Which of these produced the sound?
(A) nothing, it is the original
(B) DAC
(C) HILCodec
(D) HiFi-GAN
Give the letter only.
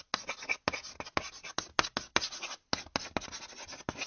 A